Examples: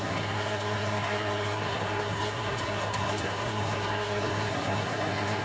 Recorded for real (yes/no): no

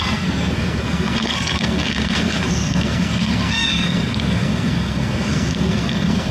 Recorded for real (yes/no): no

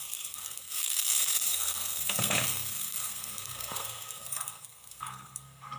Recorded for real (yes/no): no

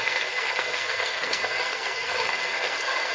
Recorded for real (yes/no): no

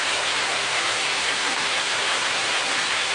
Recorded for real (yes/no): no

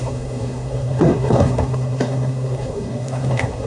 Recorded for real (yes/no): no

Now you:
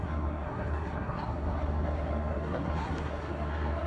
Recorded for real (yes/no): no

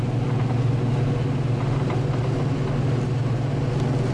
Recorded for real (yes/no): yes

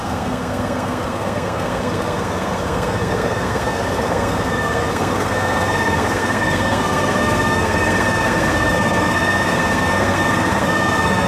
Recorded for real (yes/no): no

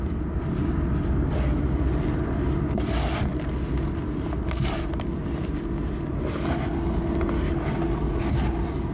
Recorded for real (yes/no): yes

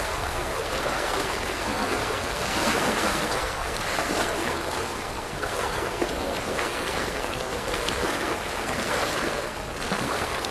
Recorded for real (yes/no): no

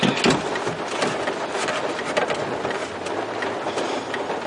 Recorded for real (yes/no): yes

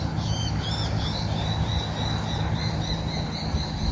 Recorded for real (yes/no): yes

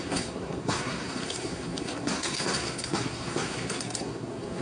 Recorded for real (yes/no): no